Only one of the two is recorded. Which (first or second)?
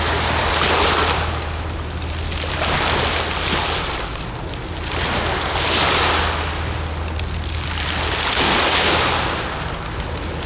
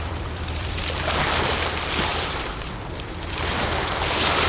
first